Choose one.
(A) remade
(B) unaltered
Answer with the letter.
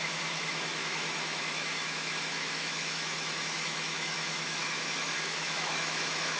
A